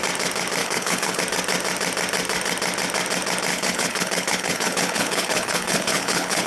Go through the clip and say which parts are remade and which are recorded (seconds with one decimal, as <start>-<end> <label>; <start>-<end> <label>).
0.0-0.6 recorded; 0.6-1.2 remade; 1.2-3.5 recorded; 3.5-6.5 remade